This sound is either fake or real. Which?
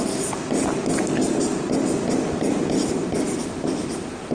real